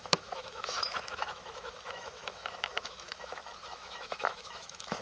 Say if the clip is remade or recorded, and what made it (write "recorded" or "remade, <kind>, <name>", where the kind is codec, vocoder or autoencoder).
remade, autoencoder, DAC-VAE